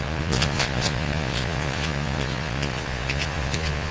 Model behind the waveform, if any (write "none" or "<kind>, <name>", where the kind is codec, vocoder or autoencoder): vocoder, Vocos